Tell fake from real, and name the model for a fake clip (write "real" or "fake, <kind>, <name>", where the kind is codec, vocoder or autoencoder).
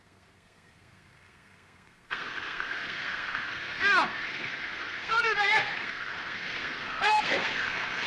fake, codec, SNAC